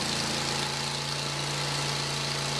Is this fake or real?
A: real